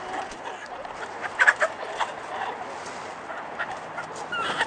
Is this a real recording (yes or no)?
yes